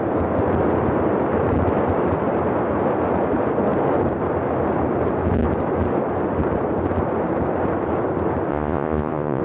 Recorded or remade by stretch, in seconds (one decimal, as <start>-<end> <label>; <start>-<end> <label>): 0.0-8.5 recorded; 8.5-9.4 remade